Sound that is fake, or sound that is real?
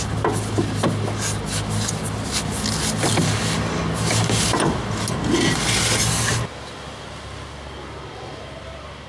real